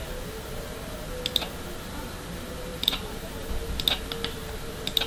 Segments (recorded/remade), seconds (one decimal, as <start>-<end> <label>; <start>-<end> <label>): 0.0-2.7 recorded; 2.7-3.6 remade; 3.6-5.1 recorded